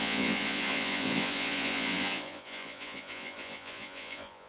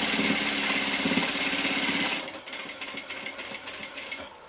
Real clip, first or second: second